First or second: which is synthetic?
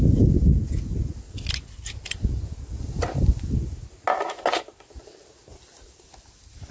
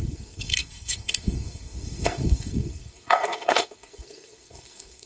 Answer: second